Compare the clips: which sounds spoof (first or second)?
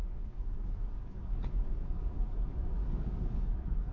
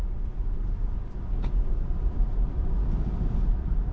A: first